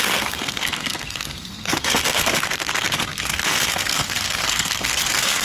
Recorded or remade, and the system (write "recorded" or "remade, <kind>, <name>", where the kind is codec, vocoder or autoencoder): remade, codec, SNAC